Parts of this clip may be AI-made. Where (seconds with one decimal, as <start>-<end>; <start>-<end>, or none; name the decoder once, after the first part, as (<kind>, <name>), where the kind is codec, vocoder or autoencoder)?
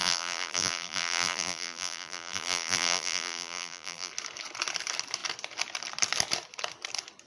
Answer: 0.0-4.1 (vocoder, BigVGAN v2)